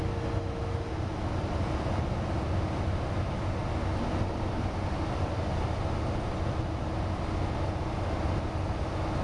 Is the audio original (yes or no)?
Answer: yes